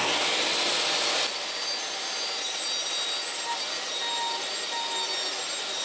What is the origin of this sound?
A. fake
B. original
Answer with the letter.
B